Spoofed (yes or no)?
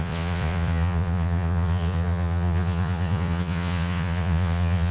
yes